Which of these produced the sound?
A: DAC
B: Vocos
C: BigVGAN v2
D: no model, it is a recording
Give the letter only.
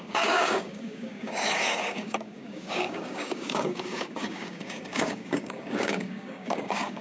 A